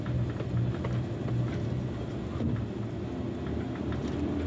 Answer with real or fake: real